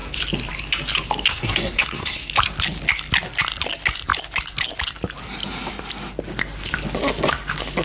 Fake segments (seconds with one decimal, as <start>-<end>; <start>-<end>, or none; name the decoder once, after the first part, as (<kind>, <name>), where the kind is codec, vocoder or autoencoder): 1.3-2.3 (codec, SNAC)